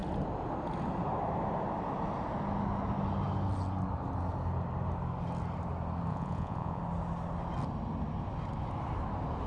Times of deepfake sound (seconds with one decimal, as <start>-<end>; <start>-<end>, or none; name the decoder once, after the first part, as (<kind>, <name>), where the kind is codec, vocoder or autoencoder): 6.1-6.8 (vocoder, Vocos)